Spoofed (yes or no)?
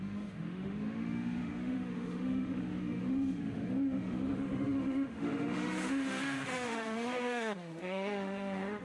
yes